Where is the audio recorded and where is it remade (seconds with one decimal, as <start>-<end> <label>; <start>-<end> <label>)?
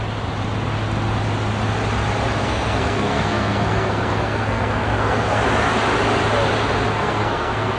0.0-2.4 recorded; 2.4-5.4 remade; 5.4-6.9 recorded; 6.9-7.8 remade